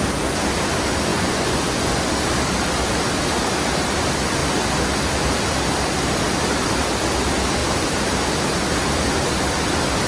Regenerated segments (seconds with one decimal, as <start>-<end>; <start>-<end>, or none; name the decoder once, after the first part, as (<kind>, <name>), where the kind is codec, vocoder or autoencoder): 1.1-2.1 (vocoder, Vocos)